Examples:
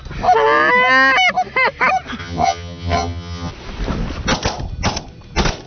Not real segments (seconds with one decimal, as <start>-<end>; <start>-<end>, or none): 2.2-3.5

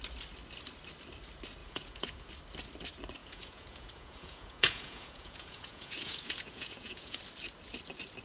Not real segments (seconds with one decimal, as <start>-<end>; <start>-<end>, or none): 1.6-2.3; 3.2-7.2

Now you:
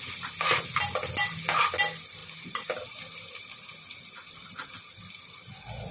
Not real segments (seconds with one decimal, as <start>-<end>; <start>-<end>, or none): 2.2-5.9

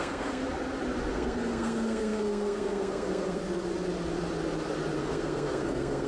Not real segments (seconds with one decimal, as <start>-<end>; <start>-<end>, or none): 0.0-0.4; 1.1-3.4; 5.0-6.1

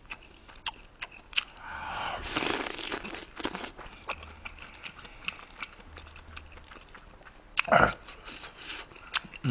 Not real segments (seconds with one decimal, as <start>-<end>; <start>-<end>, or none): none